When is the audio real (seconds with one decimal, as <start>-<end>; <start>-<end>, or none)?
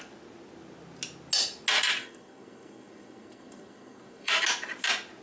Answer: 0.0-2.0; 4.3-5.2